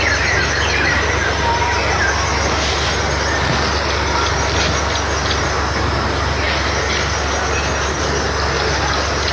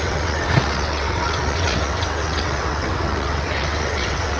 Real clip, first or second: first